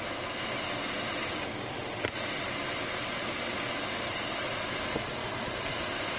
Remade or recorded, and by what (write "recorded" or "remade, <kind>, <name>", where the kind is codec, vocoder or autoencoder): recorded